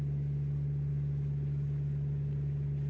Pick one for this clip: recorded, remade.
recorded